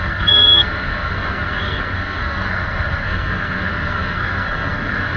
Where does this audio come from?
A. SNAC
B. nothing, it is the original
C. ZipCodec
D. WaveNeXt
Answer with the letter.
A